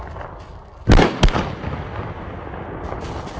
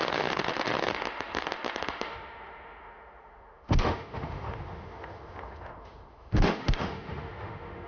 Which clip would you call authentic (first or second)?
first